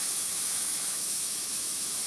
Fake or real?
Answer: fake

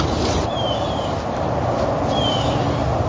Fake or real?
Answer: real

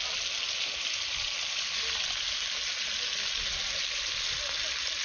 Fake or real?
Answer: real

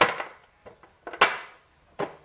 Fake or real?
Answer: real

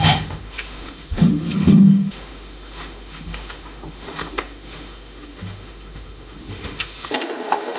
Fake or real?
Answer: fake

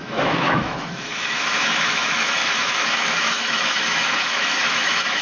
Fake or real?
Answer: fake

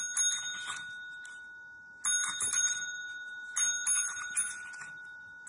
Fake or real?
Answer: real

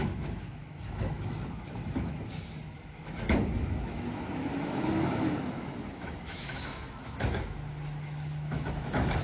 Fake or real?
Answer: fake